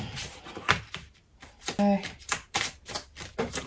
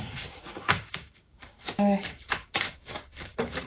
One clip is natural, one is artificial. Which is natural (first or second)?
first